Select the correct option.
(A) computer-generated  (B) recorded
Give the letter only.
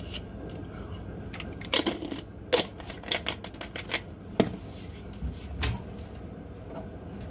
B